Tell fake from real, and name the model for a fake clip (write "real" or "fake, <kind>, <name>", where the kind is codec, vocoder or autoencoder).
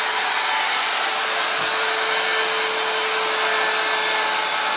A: real